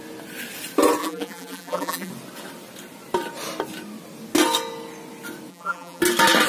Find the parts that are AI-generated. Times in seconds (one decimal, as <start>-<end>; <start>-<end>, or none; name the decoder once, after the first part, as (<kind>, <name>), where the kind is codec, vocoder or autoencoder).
1.0-2.1 (vocoder, BigVGAN v2); 5.5-6.0